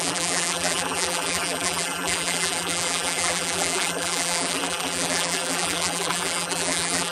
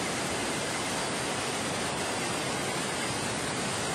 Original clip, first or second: second